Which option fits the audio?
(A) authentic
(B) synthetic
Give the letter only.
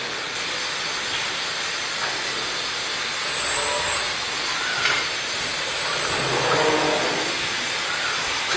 A